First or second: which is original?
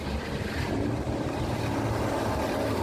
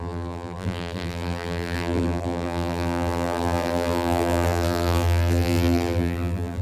first